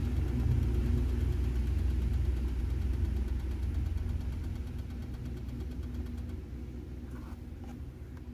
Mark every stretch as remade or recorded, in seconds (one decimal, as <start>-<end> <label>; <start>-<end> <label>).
0.0-8.3 recorded

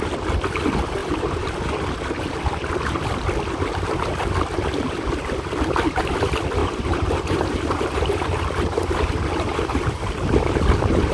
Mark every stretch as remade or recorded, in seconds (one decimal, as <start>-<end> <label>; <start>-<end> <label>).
0.0-1.0 recorded; 1.0-1.6 remade; 1.6-6.6 recorded; 6.6-8.1 remade; 8.1-11.1 recorded

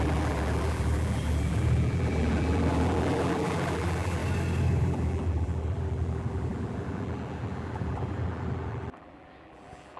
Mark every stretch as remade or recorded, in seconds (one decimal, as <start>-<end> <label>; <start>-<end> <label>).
0.0-4.2 remade; 4.2-4.8 recorded; 4.8-10.0 remade

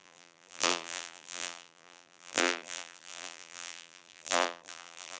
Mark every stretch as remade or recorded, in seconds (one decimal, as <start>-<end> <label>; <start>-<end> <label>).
0.0-5.2 remade